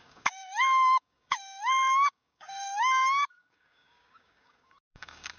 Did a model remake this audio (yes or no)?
yes